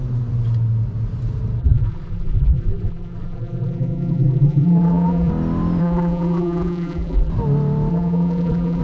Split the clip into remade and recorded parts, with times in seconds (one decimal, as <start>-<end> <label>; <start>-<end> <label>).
0.0-1.6 recorded; 1.6-5.3 remade; 5.3-5.8 recorded; 5.8-7.3 remade; 7.3-7.9 recorded; 7.9-8.8 remade